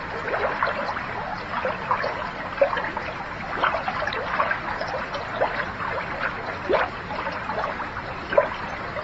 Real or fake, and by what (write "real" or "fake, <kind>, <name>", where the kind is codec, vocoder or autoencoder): fake, vocoder, BigVGAN v2